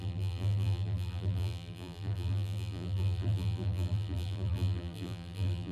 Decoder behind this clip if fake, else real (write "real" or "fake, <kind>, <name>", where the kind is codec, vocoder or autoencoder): fake, vocoder, BigVGAN v2